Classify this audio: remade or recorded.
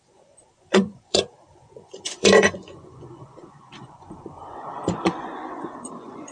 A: remade